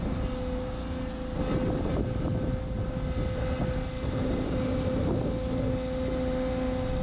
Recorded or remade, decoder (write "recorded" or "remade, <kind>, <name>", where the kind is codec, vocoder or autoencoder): recorded